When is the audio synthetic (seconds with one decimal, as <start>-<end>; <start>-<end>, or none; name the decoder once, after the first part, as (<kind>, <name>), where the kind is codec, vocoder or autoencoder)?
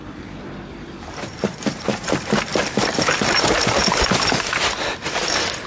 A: none